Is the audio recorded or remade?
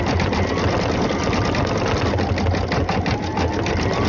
recorded